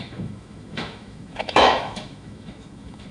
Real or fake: fake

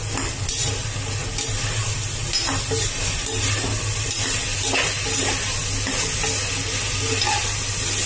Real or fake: real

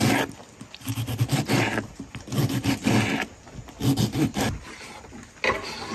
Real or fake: real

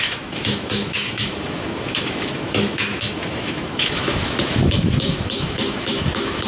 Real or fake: fake